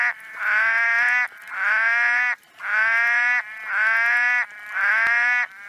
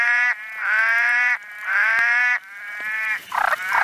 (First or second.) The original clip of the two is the first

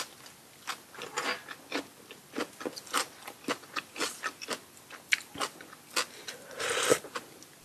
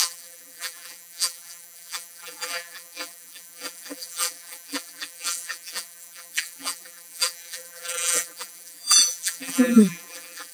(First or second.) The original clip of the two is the first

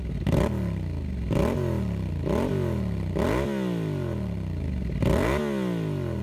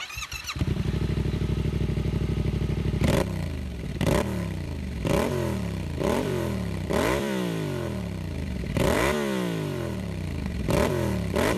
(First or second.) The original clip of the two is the first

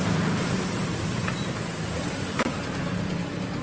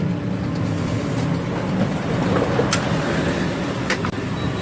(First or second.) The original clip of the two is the second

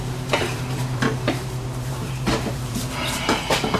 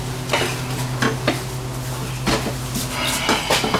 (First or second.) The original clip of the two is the second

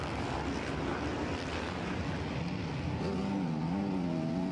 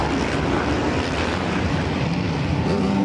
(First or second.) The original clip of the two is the first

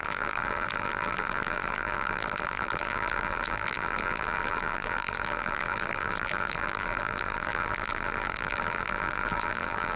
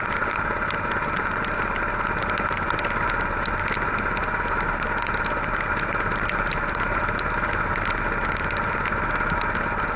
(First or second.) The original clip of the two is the second